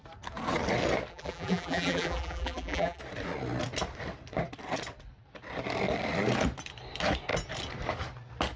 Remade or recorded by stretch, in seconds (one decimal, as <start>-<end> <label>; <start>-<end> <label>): 0.0-1.1 recorded; 1.1-3.0 remade; 3.0-8.6 recorded